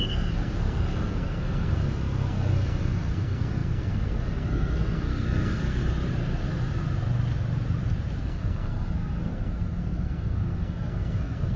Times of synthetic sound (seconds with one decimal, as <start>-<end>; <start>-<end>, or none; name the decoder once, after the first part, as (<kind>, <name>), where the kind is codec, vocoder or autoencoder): 0.0-5.8 (codec, SNAC); 8.2-11.6